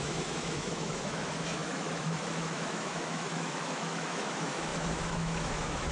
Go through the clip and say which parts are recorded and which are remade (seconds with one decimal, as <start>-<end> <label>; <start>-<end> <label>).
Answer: 0.0-5.9 remade